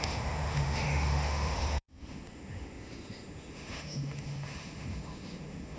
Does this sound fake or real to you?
fake